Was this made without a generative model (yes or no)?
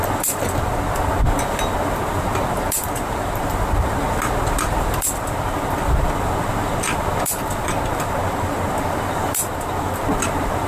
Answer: yes